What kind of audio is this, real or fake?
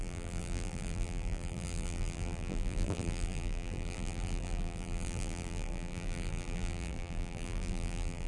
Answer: fake